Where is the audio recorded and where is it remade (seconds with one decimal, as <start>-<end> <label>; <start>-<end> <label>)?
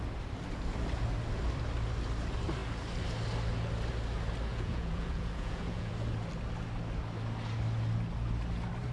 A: 0.0-4.5 recorded; 4.5-5.9 remade; 5.9-8.9 recorded